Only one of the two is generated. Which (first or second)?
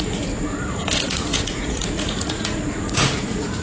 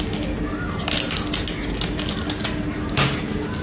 first